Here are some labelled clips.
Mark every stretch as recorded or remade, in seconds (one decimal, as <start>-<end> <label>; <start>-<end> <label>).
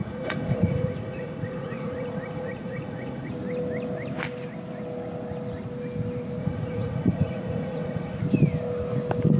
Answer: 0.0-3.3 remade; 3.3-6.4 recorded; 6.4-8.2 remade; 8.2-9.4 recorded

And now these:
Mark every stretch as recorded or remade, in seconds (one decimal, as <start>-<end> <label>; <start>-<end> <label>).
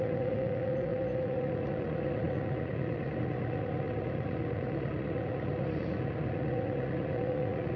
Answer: 0.0-7.8 remade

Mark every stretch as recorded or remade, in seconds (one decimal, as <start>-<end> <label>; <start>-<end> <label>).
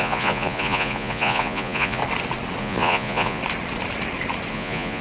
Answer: 0.0-2.0 remade; 2.0-2.6 recorded; 2.6-3.4 remade; 3.4-4.5 recorded; 4.5-5.0 remade